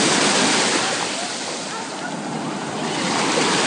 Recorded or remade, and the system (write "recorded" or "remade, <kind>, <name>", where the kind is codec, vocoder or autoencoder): recorded